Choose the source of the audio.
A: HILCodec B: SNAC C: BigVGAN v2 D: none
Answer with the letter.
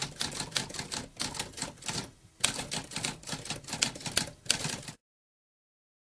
D